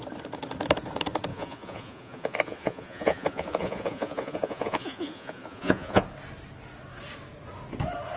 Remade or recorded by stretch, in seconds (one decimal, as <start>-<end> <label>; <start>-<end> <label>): 0.0-1.3 recorded; 1.3-6.0 remade; 6.0-8.2 recorded